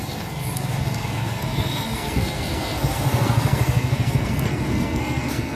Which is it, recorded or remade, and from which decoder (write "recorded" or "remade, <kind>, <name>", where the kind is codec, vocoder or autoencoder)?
remade, codec, SNAC